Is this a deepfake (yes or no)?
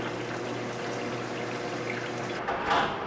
no